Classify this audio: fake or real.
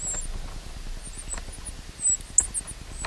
real